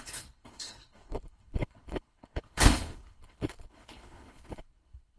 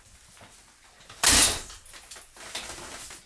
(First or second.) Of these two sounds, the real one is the second